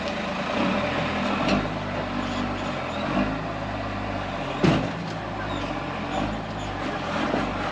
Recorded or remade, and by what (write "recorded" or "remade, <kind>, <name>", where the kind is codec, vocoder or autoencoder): recorded